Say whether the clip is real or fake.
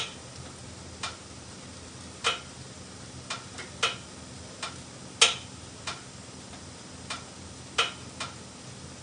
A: real